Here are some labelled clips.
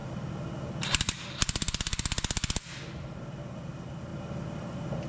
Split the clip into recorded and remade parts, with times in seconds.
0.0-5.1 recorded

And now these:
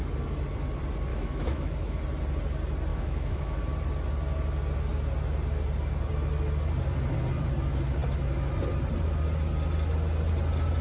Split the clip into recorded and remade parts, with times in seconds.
0.0-1.1 recorded; 1.1-2.0 remade; 2.0-2.9 recorded; 2.9-3.6 remade; 3.6-10.8 recorded

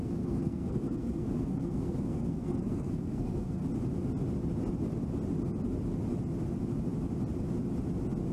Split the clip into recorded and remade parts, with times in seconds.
0.0-3.6 remade; 3.6-8.3 recorded

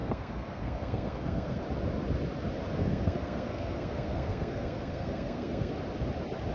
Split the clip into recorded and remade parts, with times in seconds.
0.0-1.6 remade; 1.6-2.8 recorded; 2.8-5.7 remade; 5.7-6.5 recorded

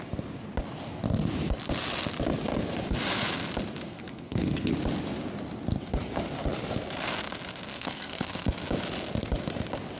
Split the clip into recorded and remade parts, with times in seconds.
0.0-3.9 recorded; 3.9-4.7 remade; 4.7-7.7 recorded; 7.7-8.5 remade; 8.5-10.0 recorded